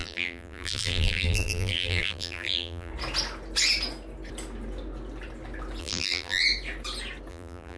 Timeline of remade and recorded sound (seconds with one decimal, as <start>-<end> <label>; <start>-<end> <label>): 0.0-2.9 remade; 2.9-5.8 recorded; 5.8-6.4 remade; 6.4-7.3 recorded; 7.3-7.8 remade